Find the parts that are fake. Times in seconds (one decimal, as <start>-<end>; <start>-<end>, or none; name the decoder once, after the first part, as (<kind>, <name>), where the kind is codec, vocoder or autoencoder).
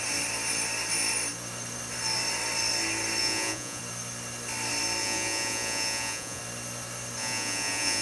3.2-3.8 (vocoder, Vocos); 5.0-6.4; 7.2-8.0